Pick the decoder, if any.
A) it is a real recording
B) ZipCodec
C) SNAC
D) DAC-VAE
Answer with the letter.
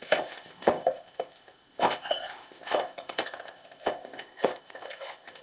B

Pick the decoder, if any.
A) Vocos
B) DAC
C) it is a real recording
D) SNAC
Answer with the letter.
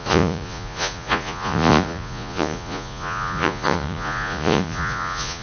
A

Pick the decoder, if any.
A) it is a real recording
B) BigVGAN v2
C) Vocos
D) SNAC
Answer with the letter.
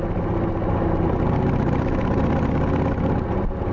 A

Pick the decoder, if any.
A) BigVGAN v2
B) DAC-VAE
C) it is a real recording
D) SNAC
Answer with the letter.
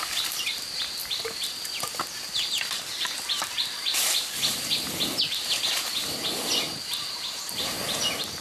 C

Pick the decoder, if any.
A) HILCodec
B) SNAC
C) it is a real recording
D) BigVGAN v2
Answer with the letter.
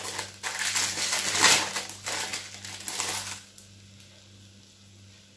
C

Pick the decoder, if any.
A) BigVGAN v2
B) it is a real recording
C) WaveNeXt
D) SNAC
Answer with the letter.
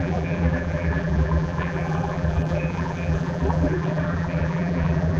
A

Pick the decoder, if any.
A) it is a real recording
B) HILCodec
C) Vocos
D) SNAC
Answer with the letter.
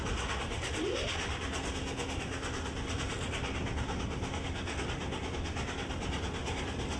A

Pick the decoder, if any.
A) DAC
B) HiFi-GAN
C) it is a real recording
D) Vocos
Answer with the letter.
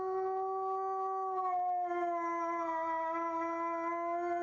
C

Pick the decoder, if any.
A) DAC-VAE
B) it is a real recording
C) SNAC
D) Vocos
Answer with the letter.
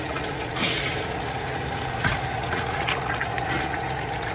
D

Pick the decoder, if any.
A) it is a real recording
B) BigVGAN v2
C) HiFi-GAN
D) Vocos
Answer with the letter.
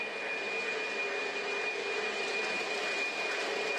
A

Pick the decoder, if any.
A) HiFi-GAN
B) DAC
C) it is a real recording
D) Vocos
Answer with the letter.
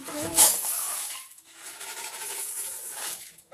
B